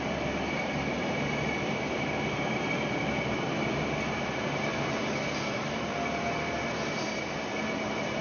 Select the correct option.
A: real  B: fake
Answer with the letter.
A